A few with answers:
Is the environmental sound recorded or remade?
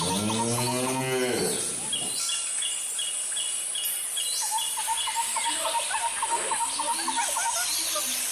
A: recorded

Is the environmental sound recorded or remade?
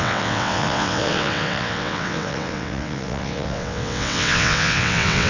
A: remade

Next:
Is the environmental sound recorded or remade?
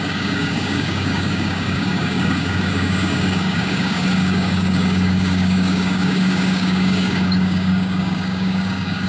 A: remade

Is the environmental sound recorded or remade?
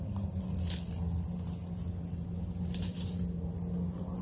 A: recorded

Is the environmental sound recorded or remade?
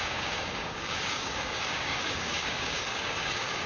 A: remade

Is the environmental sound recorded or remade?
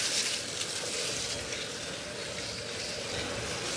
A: recorded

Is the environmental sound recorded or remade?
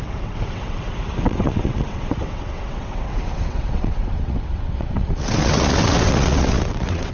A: remade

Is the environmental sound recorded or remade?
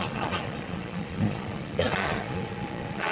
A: remade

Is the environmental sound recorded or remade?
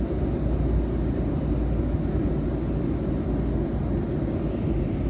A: recorded